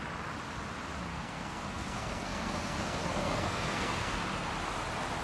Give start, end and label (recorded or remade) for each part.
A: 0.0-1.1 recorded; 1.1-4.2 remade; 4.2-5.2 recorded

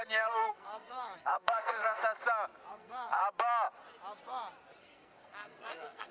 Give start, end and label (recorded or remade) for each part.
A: 0.0-2.0 remade; 2.0-2.7 recorded; 2.7-3.2 remade; 3.2-4.8 recorded; 4.8-6.1 remade

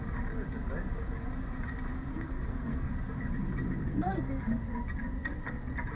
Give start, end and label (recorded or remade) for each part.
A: 0.0-2.1 recorded; 2.1-2.9 remade; 2.9-3.8 recorded; 3.8-4.3 remade; 4.3-6.0 recorded

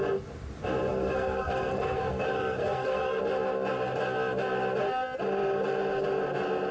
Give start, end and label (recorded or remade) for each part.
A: 0.0-0.9 recorded; 0.9-3.2 remade; 3.2-6.7 recorded

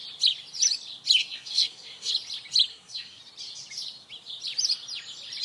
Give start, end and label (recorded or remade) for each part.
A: 0.0-1.2 recorded; 1.2-2.1 remade; 2.1-2.7 recorded; 2.7-3.2 remade; 3.2-5.4 recorded

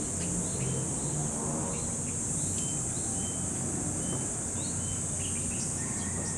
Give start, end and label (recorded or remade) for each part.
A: 0.0-6.4 recorded

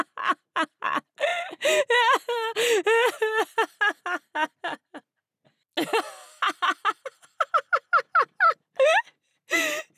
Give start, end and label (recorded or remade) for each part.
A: 0.0-10.0 recorded

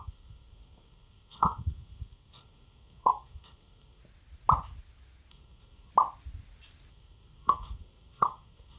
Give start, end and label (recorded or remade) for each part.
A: 0.0-4.0 remade; 4.0-5.3 recorded; 5.3-5.9 remade; 5.9-6.9 recorded; 6.9-8.8 remade